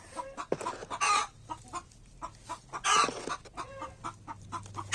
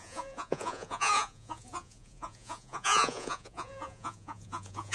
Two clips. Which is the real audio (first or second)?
first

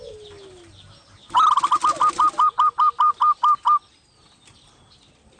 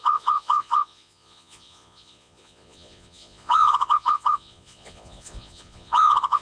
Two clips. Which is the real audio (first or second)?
first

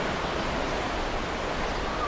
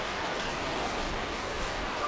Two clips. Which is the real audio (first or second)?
first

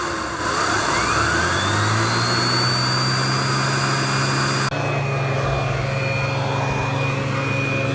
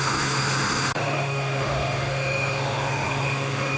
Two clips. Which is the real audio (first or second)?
first